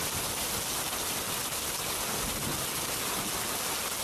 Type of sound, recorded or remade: recorded